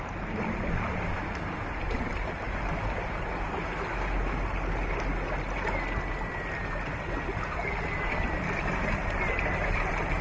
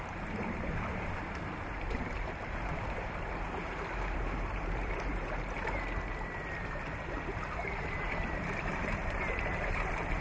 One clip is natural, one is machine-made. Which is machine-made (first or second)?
second